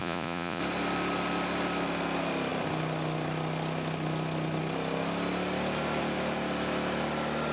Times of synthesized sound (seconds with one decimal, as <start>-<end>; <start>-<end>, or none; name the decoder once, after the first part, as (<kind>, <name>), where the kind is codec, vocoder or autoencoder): 0.0-0.6 (vocoder, Vocos)